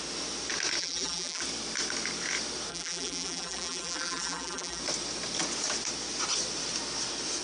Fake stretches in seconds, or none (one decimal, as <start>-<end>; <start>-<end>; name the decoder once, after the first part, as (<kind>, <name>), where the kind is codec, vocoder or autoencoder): 0.8-1.4 (vocoder, BigVGAN v2); 2.7-4.8